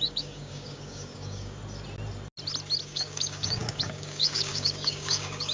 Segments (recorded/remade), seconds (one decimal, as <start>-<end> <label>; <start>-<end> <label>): 0.0-1.6 remade; 1.6-2.8 recorded; 2.8-5.5 remade